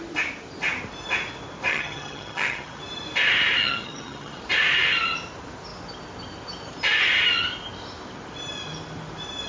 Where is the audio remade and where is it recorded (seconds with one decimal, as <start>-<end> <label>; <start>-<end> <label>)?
0.0-1.7 recorded; 1.7-2.8 remade; 2.8-3.6 recorded; 3.6-4.4 remade; 4.4-9.5 recorded